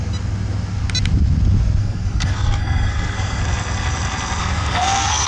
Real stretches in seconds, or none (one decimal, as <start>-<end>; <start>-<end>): 0.0-1.8; 3.4-4.4